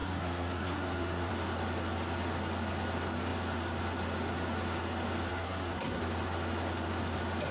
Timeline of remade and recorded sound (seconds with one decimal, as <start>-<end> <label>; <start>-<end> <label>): 0.0-1.3 remade; 1.3-5.3 recorded; 5.3-6.0 remade; 6.0-7.5 recorded